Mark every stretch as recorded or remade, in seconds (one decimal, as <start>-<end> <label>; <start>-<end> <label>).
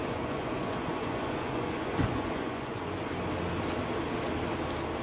0.0-3.0 remade; 3.0-5.0 recorded